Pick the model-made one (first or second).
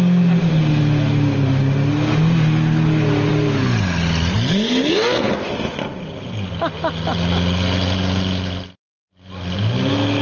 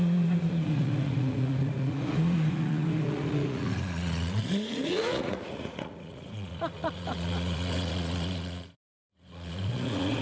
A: second